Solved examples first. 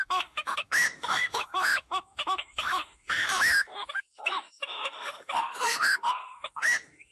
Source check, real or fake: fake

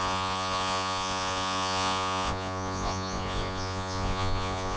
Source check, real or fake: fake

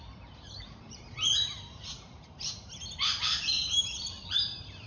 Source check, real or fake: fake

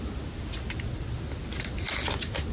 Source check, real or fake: real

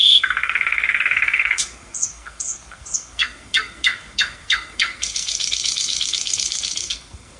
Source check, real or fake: fake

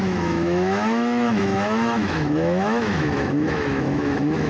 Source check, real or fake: fake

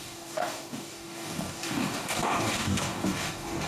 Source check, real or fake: fake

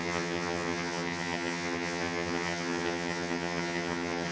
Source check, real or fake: fake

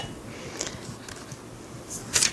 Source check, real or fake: real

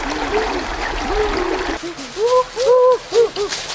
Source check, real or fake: real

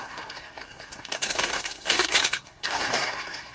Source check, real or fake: fake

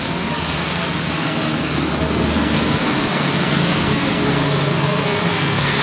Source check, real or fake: fake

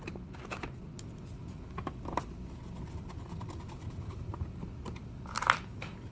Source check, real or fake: real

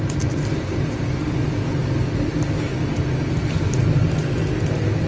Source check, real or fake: real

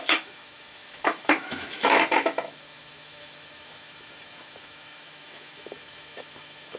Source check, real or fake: fake